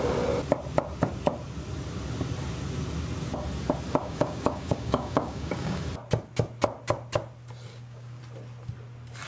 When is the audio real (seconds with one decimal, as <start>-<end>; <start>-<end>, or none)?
0.0-4.0; 5.8-7.7; 8.2-9.3